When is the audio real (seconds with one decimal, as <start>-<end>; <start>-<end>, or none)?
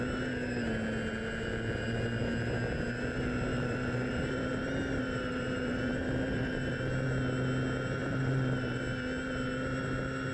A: 0.0-3.5; 6.9-8.0; 8.8-10.3